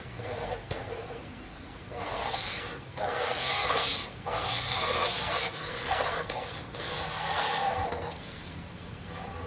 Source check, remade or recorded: remade